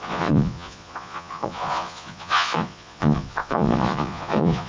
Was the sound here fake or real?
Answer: fake